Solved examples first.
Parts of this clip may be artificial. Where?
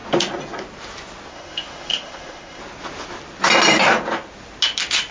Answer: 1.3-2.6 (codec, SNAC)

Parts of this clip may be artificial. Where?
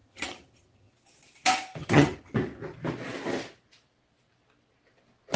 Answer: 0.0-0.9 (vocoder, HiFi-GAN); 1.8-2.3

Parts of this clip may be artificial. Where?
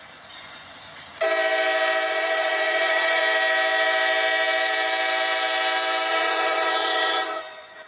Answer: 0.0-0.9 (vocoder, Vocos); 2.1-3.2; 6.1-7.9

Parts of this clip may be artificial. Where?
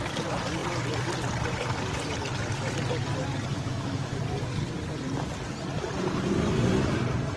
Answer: 3.5-4.2 (autoencoder, DAC-VAE)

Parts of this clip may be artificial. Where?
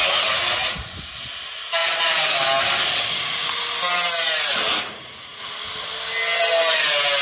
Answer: none